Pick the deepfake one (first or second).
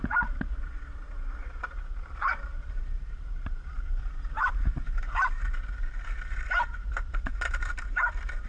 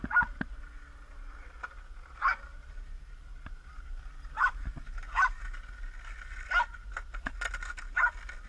first